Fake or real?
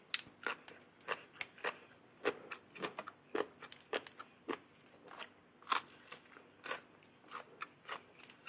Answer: real